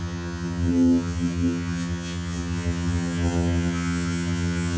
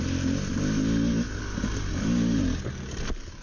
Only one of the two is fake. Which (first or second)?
first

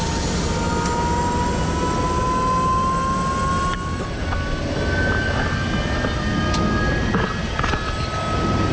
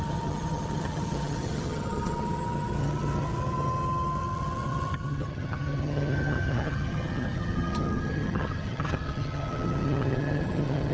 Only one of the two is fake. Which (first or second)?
second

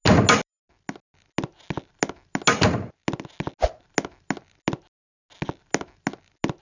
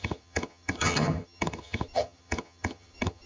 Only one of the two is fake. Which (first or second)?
second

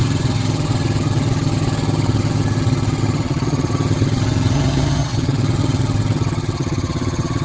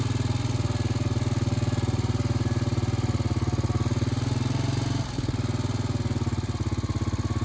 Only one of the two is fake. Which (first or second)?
first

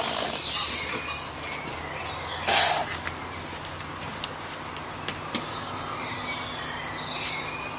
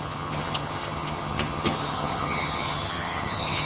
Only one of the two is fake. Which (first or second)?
second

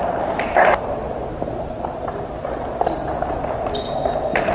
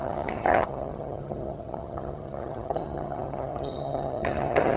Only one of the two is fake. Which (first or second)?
second